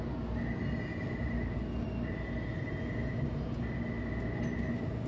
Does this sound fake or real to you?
real